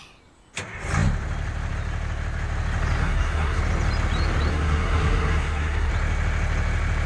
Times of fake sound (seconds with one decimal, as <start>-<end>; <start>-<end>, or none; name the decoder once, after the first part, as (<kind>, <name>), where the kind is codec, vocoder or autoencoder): 3.0-3.6 (codec, SNAC); 4.5-5.9